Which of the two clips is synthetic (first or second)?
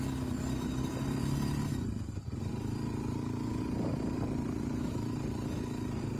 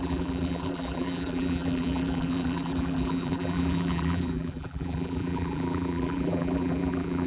second